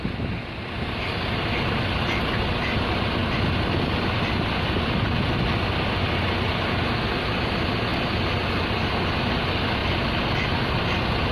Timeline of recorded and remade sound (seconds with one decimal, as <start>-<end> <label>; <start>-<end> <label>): 0.0-11.3 recorded